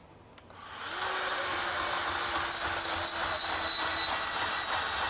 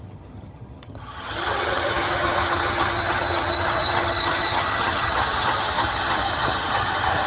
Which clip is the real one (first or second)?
first